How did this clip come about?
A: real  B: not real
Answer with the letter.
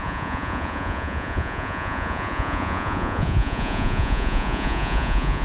B